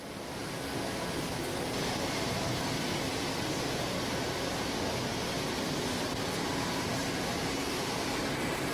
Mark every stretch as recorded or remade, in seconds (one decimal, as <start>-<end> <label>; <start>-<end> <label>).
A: 0.0-0.4 remade; 0.4-1.6 recorded; 1.6-3.3 remade; 3.3-4.0 recorded; 4.0-8.7 remade